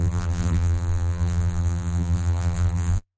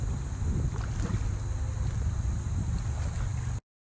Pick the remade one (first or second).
first